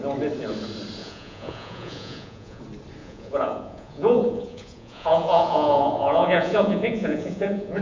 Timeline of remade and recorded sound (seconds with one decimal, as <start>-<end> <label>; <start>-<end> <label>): 0.0-1.0 recorded; 1.0-2.6 remade; 2.6-3.0 recorded; 3.0-7.8 remade